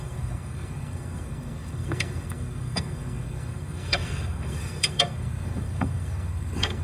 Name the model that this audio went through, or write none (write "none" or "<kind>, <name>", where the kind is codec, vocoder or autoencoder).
codec, SNAC